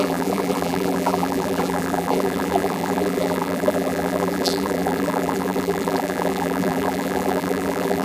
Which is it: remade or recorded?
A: remade